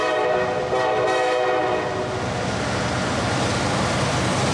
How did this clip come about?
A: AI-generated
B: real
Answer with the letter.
B